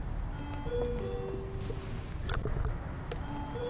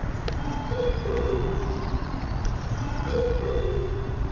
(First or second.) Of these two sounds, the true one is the first